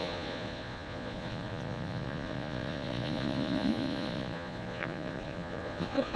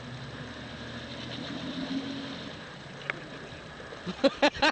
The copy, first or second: first